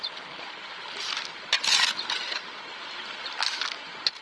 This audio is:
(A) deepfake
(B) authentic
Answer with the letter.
B